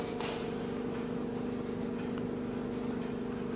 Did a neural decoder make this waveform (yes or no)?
no